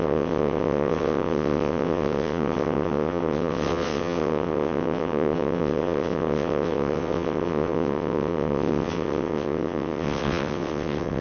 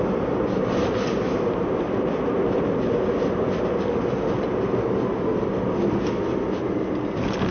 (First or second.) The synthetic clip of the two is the first